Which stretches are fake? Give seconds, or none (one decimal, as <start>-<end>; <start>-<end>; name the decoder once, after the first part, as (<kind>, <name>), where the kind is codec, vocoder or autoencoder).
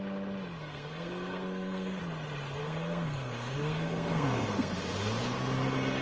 0.6-2.0 (codec, SNAC); 2.6-4.8